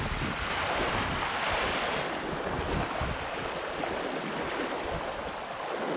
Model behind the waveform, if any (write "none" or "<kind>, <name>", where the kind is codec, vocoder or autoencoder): none